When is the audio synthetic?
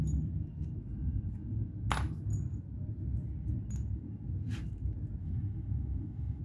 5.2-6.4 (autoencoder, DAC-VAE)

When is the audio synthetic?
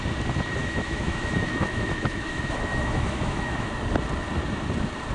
0.6-3.7 (autoencoder, DAC-VAE)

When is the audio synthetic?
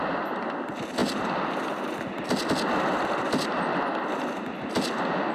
none